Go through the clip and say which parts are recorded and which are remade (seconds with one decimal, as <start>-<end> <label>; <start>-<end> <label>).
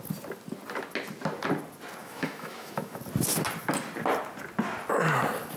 0.0-2.0 recorded; 2.0-3.0 remade; 3.0-5.6 recorded